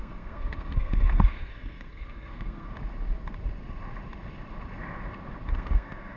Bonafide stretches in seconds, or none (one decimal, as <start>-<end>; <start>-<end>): 2.7-5.5